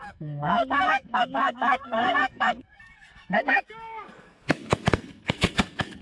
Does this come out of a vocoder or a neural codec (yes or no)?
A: yes